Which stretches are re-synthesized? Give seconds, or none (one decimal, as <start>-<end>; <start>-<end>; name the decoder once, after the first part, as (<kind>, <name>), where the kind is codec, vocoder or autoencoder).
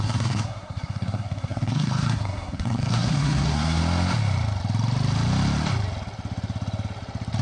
0.0-3.8 (codec, SNAC)